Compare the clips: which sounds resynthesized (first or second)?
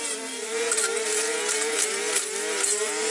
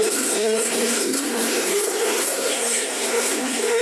second